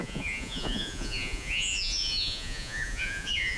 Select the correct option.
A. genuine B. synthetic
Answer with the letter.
B